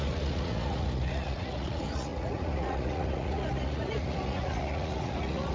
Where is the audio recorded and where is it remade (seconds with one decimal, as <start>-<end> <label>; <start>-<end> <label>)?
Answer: 0.0-5.5 remade